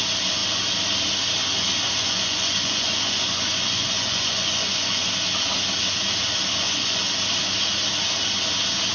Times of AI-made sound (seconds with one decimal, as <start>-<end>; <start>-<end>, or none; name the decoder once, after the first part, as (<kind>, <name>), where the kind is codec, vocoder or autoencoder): 2.0-5.1 (vocoder, Vocos); 6.5-7.0